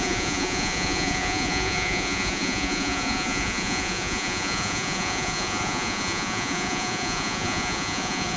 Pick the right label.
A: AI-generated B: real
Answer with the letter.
A